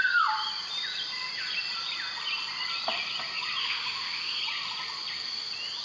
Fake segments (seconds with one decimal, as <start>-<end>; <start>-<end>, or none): 3.6-4.4